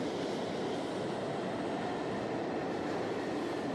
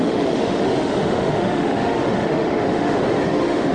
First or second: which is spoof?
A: second